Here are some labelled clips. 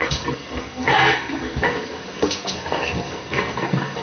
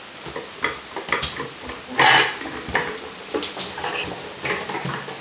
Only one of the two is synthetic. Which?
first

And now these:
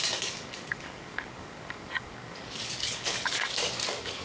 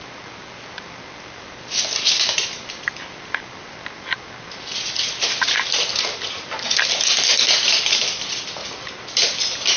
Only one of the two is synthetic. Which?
first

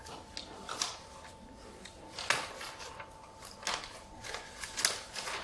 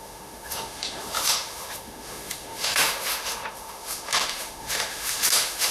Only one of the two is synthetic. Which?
second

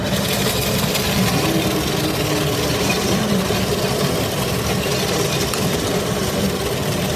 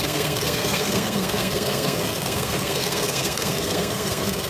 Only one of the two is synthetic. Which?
second